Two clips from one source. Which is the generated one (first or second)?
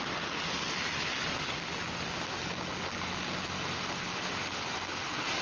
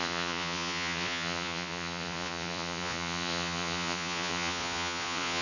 second